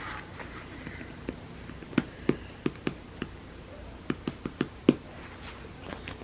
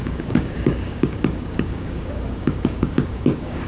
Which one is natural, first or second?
first